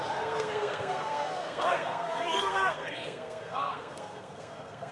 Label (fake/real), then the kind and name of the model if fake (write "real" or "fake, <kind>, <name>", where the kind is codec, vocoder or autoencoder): fake, codec, SNAC